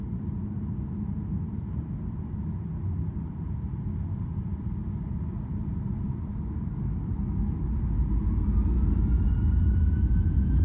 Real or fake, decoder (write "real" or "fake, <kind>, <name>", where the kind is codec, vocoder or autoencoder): real